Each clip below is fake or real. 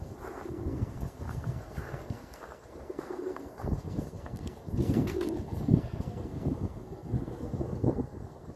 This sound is fake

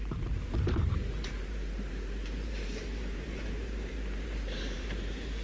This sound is fake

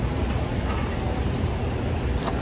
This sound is real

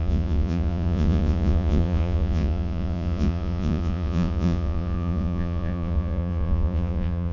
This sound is fake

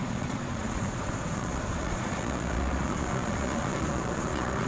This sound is fake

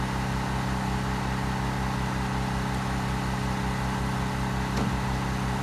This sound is real